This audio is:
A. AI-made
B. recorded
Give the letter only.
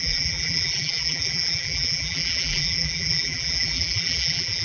A